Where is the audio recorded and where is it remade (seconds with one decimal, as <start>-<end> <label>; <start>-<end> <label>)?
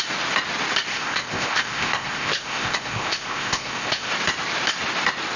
0.0-0.9 recorded; 0.9-4.1 remade; 4.1-5.4 recorded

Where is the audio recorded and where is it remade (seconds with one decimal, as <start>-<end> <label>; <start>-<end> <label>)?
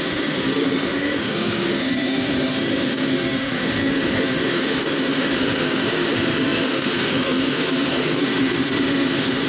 0.0-9.5 remade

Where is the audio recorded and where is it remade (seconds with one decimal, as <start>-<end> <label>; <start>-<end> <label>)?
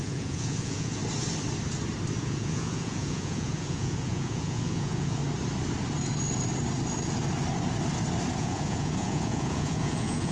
0.0-1.0 remade; 1.0-2.2 recorded; 2.2-5.2 remade; 5.2-8.4 recorded; 8.4-10.3 remade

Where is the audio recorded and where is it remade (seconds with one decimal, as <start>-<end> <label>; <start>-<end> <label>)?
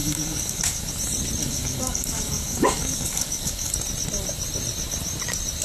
0.0-0.9 remade; 0.9-1.4 recorded; 1.4-3.7 remade; 3.7-5.6 recorded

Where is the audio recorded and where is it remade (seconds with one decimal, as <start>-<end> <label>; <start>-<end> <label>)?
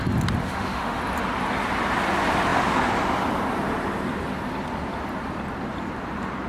0.0-0.4 recorded; 0.4-1.0 remade; 1.0-6.5 recorded